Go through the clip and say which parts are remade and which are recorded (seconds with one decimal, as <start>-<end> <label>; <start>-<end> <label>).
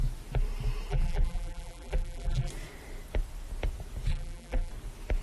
0.0-0.9 recorded; 0.9-2.5 remade; 2.5-4.1 recorded; 4.1-4.7 remade; 4.7-5.2 recorded